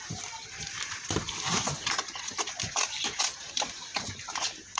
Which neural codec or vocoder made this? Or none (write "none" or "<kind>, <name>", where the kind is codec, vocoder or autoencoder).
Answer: vocoder, BigVGAN v2